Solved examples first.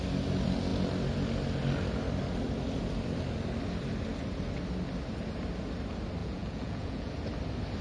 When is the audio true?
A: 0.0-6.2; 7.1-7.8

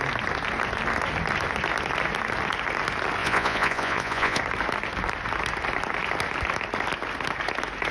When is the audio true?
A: 0.0-3.2; 4.4-7.9

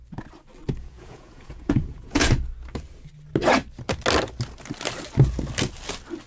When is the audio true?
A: 0.0-0.8; 2.3-6.3

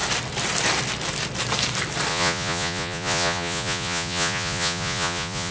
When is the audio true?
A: 0.0-2.1

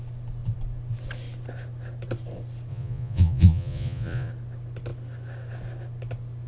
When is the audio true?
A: 0.0-2.7; 4.3-6.5

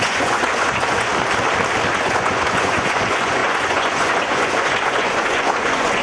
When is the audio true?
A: 1.1-1.9